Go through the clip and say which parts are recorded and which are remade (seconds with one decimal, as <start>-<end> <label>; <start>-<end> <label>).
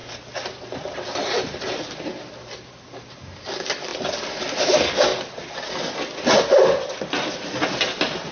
0.0-8.3 remade